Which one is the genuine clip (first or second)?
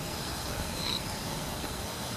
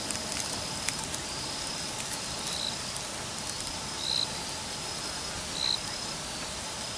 second